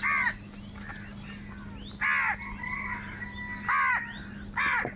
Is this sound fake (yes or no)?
no